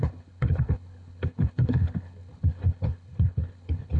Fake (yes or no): yes